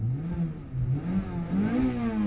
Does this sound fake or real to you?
real